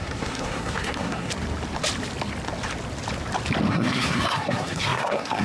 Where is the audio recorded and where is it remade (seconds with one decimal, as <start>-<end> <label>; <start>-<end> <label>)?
0.0-1.3 remade; 1.3-3.7 recorded; 3.7-5.4 remade